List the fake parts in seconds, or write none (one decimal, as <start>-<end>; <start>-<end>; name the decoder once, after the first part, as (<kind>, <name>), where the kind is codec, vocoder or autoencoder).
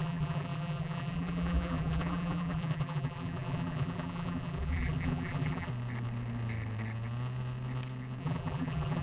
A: 0.0-5.7 (vocoder, BigVGAN v2); 8.2-9.0